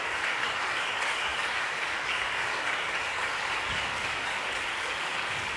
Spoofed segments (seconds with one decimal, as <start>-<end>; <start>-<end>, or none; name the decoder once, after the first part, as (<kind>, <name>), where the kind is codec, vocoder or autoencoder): 0.0-5.6 (codec, DAC)